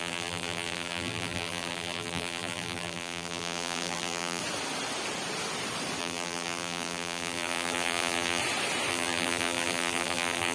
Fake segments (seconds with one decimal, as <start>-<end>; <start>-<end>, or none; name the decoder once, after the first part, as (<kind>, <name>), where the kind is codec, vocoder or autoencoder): 0.0-4.4 (vocoder, BigVGAN v2); 6.0-8.4; 8.9-10.5